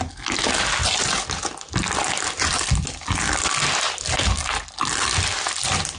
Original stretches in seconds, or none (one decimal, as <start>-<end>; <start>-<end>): 0.0-6.0